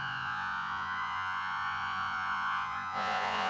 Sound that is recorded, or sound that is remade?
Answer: remade